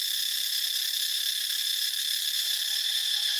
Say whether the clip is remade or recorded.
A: remade